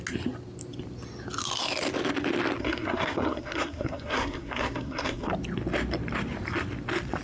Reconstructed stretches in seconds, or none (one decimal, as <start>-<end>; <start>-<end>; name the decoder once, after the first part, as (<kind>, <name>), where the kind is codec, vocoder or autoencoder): 2.6-5.3 (codec, SNAC)